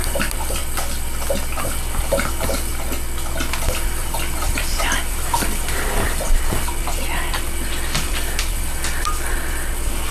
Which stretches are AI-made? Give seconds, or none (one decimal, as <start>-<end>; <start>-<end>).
0.0-0.6; 1.6-2.7; 3.6-10.1